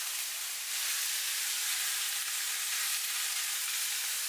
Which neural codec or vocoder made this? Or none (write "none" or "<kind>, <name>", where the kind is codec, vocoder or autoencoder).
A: none